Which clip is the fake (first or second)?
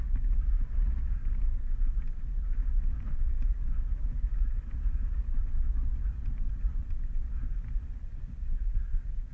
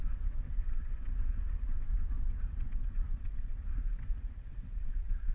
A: second